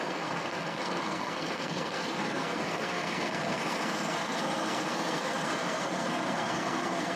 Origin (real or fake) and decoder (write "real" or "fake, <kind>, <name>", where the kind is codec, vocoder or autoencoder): fake, codec, SNAC